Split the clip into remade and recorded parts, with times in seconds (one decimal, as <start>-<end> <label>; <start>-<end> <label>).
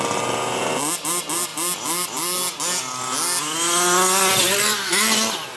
0.0-5.6 recorded